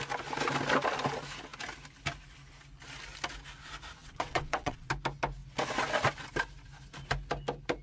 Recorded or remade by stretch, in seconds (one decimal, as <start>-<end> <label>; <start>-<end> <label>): 0.0-4.0 recorded; 4.0-4.9 remade; 4.9-7.8 recorded